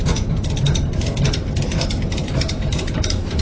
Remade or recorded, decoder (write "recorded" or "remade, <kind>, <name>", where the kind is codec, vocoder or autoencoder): remade, vocoder, BigVGAN v2